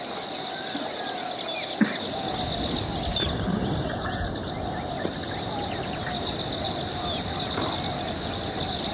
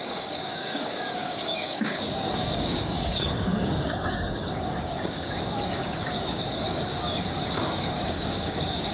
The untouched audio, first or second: first